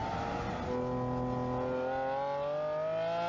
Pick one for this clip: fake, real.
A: real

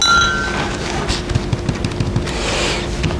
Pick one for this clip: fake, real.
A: real